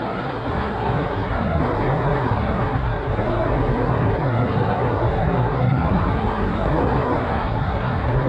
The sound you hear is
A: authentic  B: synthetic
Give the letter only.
B